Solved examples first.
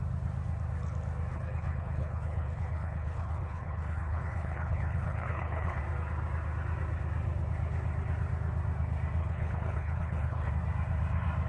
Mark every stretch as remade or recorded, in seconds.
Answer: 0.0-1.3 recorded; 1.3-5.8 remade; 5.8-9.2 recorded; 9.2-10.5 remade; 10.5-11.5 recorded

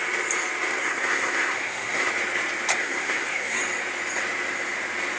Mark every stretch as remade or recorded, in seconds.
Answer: 0.0-0.7 recorded; 0.7-2.1 remade; 2.1-2.7 recorded; 2.7-3.6 remade; 3.6-5.2 recorded

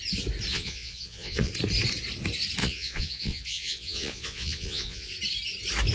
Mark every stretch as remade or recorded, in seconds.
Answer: 0.0-0.5 recorded; 0.5-1.5 remade; 1.5-2.6 recorded; 2.6-5.1 remade; 5.1-5.9 recorded

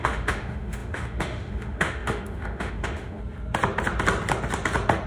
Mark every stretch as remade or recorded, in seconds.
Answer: 0.0-3.2 remade; 3.2-5.1 recorded

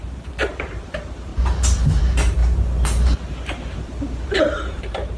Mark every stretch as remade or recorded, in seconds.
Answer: 0.0-1.3 remade; 1.3-2.0 recorded; 2.0-5.2 remade

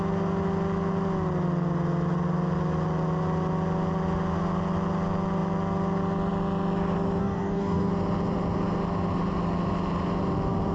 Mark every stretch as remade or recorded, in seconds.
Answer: 0.0-7.2 recorded; 7.2-7.9 remade; 7.9-10.7 recorded

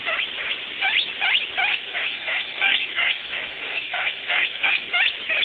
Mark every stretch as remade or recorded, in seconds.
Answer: 0.0-1.7 recorded; 1.7-4.9 remade; 4.9-5.4 recorded